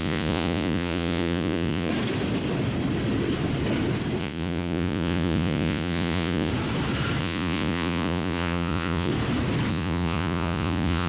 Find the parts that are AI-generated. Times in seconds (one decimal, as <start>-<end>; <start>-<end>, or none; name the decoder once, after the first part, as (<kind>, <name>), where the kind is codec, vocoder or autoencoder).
0.0-1.9 (vocoder, Vocos); 4.2-6.5; 7.2-9.1; 9.7-11.1